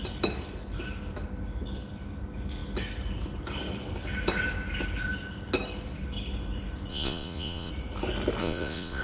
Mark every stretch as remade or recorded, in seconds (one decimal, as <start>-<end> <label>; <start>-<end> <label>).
0.0-6.9 recorded; 6.9-7.7 remade; 7.7-8.4 recorded; 8.4-9.0 remade